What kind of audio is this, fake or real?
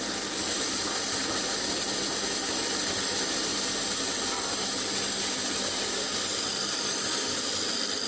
real